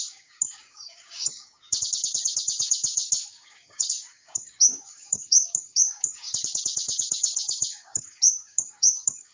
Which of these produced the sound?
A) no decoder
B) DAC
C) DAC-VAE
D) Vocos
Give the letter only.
B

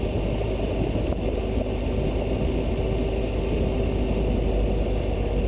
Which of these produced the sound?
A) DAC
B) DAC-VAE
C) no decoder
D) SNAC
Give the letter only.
C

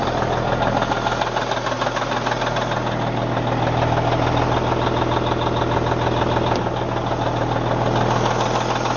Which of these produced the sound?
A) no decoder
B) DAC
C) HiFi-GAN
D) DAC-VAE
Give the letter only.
A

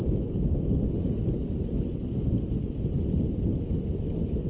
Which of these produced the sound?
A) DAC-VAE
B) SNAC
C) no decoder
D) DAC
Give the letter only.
C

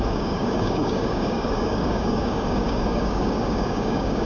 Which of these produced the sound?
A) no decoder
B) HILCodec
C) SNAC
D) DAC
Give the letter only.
D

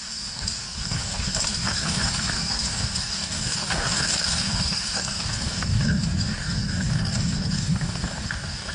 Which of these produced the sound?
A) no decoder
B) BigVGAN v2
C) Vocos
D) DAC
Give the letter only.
D